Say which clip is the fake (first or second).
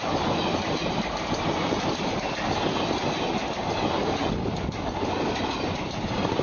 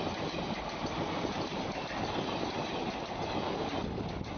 second